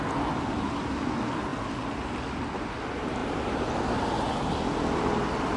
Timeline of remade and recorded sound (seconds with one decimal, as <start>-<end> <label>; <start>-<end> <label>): 0.0-5.6 recorded